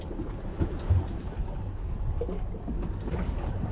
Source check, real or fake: real